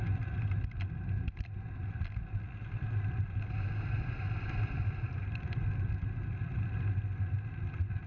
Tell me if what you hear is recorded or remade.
recorded